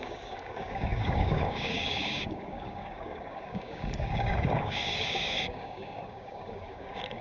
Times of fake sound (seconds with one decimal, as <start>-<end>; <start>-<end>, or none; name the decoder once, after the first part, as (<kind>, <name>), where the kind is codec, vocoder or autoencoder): 0.0-7.2 (codec, DAC)